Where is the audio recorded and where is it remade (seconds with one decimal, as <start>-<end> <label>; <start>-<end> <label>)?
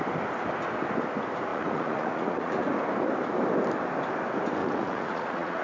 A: 0.0-1.5 recorded; 1.5-2.7 remade; 2.7-4.6 recorded; 4.6-5.6 remade